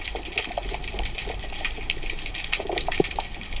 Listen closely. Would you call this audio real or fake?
real